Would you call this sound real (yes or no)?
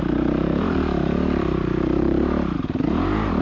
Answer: no